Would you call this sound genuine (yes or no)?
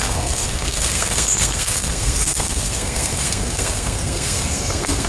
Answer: no